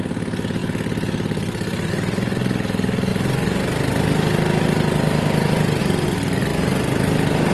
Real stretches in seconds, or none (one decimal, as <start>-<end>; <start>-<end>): 0.0-7.5